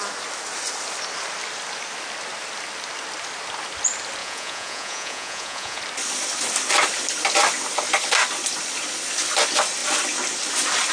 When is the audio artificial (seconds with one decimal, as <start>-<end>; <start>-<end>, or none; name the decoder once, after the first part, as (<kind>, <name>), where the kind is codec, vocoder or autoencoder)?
4.2-5.8 (vocoder, Vocos)